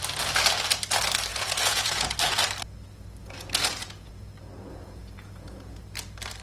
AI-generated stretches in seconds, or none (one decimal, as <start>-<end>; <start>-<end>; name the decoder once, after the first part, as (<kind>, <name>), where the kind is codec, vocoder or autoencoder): 1.3-2.1 (vocoder, Vocos); 3.2-4.1; 4.7-5.8